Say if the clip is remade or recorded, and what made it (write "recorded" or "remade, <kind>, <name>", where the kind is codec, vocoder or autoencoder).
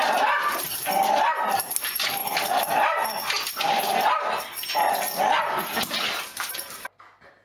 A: recorded